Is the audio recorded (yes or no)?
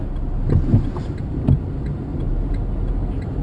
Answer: yes